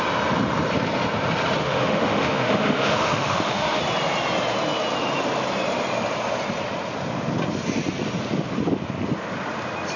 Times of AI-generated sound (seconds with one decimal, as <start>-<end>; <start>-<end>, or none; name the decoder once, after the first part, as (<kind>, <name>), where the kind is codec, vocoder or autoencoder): 1.6-3.8 (autoencoder, DAC-VAE)